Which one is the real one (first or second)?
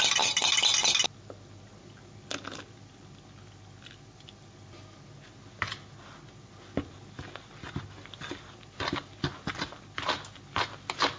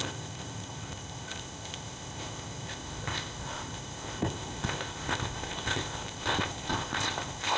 first